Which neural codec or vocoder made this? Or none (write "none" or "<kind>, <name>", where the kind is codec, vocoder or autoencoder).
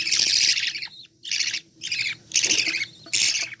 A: none